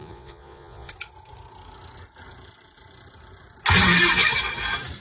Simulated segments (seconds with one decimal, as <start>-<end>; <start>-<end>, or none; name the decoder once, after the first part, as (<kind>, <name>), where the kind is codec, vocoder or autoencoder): 0.0-0.9 (vocoder, Vocos)